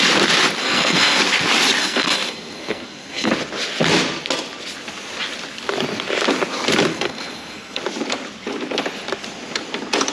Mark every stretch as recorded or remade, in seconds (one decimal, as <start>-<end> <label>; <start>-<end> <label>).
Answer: 0.0-0.6 recorded; 0.6-1.2 remade; 1.2-1.8 recorded; 1.8-3.3 remade; 3.3-6.9 recorded; 6.9-7.8 remade; 7.8-10.1 recorded